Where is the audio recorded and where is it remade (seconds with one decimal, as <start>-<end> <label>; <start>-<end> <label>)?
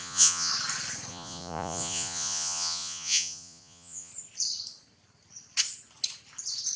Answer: 0.0-0.5 remade; 0.5-1.1 recorded; 1.1-4.1 remade; 4.1-6.8 recorded